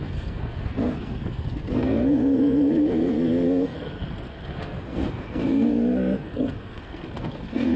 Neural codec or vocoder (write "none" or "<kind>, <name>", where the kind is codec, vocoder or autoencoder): codec, SNAC